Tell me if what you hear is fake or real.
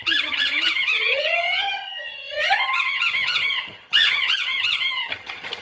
fake